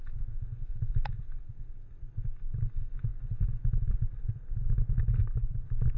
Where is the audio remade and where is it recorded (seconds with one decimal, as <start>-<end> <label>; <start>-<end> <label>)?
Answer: 0.0-0.5 recorded; 0.5-1.1 remade; 1.1-6.0 recorded